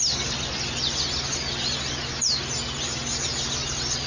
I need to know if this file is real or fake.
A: real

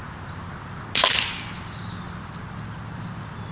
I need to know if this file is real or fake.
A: real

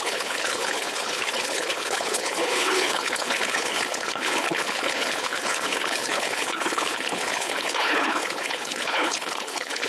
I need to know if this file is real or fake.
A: fake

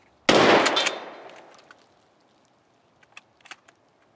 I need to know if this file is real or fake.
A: real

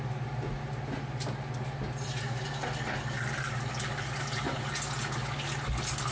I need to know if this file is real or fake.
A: real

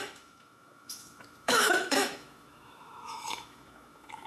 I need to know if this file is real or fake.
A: fake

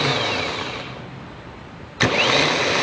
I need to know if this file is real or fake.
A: real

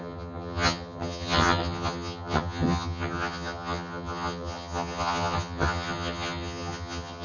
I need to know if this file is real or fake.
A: fake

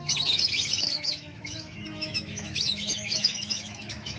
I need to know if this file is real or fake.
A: fake